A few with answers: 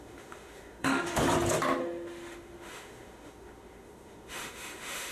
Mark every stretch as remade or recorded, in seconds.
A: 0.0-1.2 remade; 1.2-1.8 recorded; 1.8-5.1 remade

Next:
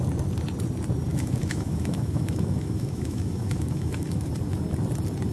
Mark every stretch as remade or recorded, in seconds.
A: 0.0-1.1 recorded; 1.1-4.3 remade; 4.3-5.3 recorded

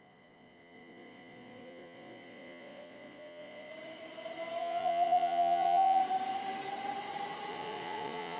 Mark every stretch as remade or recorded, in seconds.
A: 0.0-3.7 remade; 3.7-4.6 recorded; 4.6-6.0 remade; 6.0-7.5 recorded; 7.5-8.4 remade

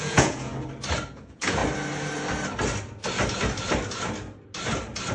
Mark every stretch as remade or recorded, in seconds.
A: 0.0-0.5 remade; 0.5-1.1 recorded; 1.1-1.6 remade; 1.6-5.1 recorded

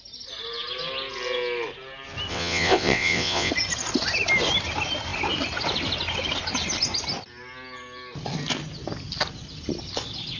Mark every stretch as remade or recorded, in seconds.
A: 0.0-2.3 recorded; 2.3-3.5 remade; 3.5-10.4 recorded

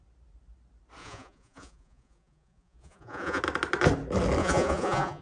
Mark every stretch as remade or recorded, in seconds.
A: 0.0-1.0 recorded; 1.0-3.4 remade; 3.4-4.4 recorded; 4.4-5.2 remade